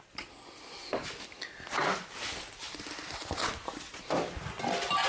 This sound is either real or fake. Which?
real